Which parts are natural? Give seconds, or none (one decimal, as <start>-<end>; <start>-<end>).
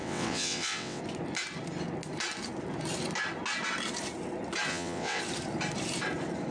1.0-4.7; 5.2-6.5